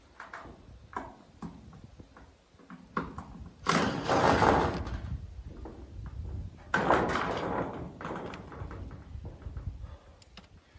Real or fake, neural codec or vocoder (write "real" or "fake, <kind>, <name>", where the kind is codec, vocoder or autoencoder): real